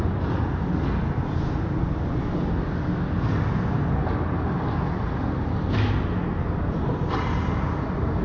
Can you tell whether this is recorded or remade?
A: recorded